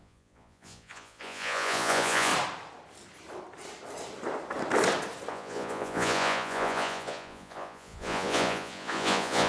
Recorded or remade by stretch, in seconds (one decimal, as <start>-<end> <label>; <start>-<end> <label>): 0.0-2.3 remade; 2.3-5.3 recorded; 5.3-9.5 remade